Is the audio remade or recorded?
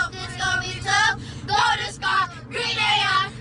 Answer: remade